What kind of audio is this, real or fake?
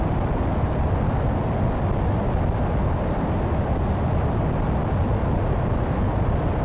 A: real